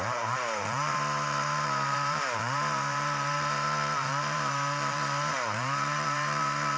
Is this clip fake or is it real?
fake